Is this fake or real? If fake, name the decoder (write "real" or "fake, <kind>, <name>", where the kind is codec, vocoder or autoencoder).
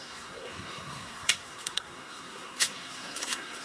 fake, codec, SNAC